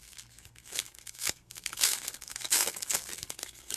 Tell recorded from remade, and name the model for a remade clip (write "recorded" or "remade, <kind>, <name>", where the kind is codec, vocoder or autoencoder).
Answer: remade, codec, SNAC